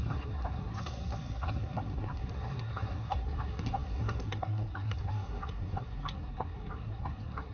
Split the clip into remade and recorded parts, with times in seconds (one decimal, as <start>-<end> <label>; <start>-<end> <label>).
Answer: 0.0-7.5 remade